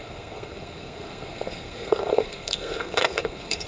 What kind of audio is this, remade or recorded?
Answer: remade